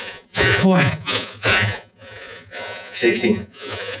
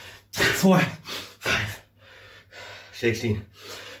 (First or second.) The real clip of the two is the second